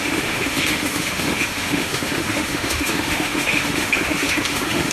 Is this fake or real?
fake